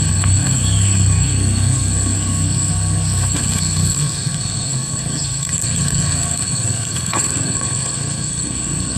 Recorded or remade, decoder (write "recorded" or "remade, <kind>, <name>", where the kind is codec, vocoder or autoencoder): remade, codec, SNAC